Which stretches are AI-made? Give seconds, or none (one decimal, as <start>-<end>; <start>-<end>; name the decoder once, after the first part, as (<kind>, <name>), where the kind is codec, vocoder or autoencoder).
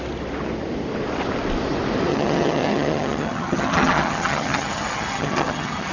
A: 2.1-5.9 (vocoder, HiFi-GAN)